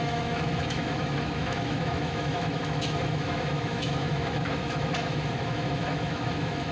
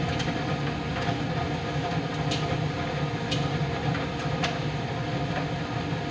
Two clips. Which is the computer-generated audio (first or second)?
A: first